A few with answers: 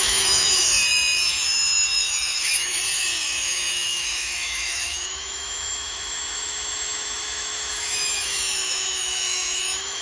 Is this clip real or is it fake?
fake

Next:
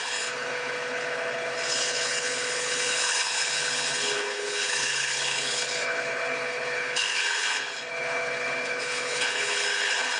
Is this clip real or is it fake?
fake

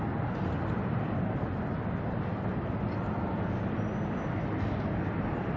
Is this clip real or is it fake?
real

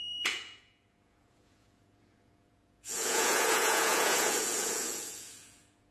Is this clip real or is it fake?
fake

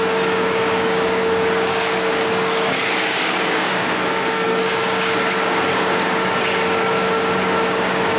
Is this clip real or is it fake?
fake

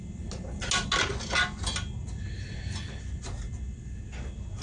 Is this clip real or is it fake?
real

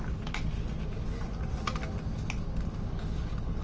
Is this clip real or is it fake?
real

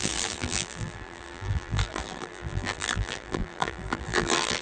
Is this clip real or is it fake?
fake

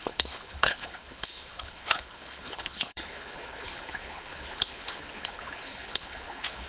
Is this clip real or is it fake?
fake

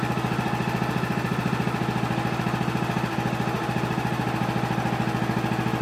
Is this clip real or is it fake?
real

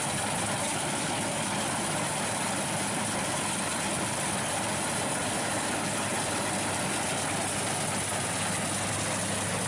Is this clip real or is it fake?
real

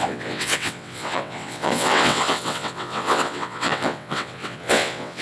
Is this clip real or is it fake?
fake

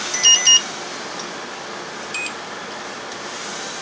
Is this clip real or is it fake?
real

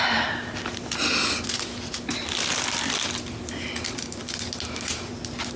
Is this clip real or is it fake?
real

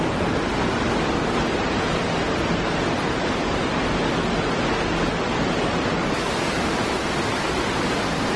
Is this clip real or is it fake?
real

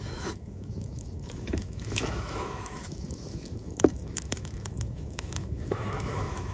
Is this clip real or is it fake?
fake